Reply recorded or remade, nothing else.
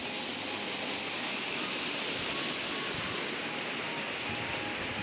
recorded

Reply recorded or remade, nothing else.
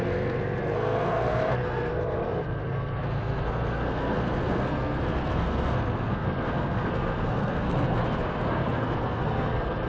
remade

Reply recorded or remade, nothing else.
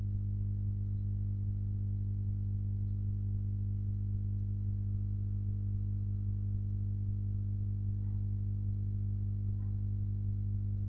recorded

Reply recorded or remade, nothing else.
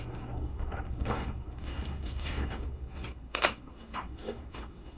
remade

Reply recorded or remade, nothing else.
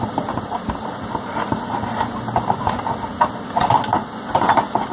recorded